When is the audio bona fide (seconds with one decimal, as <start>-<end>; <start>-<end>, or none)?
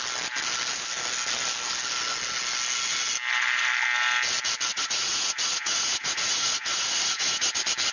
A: 0.0-4.7; 7.5-7.9